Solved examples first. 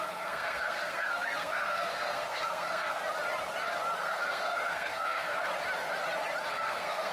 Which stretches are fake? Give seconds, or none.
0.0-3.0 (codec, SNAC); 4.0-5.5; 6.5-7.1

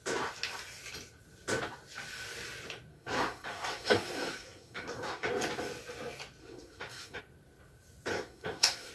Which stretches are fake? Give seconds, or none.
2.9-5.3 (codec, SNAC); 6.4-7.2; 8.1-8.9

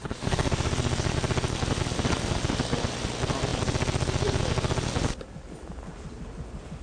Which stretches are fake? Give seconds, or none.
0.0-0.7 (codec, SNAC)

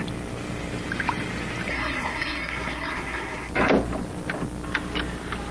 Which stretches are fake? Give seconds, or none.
1.7-3.5 (codec, SNAC)

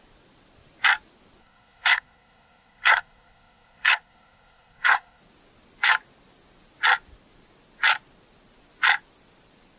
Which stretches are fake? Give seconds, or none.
1.4-5.2 (codec, SNAC)

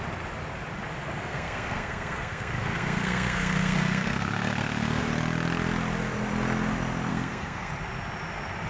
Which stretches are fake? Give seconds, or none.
1.2-5.0 (codec, SNAC); 7.1-7.7